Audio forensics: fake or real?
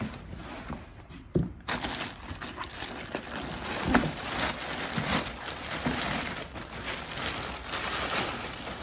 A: real